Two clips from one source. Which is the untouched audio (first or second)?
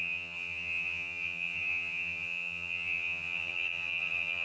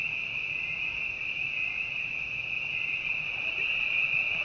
second